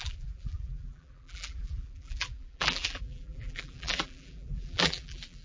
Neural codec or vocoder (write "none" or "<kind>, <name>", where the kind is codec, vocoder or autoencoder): vocoder, BigVGAN v2